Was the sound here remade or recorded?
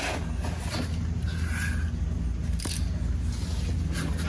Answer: recorded